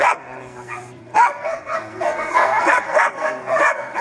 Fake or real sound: fake